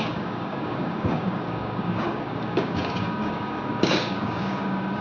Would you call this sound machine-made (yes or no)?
yes